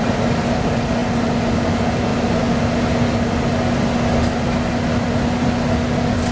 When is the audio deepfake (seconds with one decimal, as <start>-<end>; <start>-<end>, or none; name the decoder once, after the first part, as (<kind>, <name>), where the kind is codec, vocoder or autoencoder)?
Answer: none